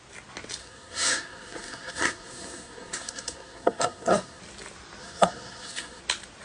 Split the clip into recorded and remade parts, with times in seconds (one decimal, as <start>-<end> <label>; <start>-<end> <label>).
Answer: 0.0-0.6 recorded; 0.6-4.4 remade; 4.4-5.0 recorded; 5.0-6.0 remade; 6.0-6.4 recorded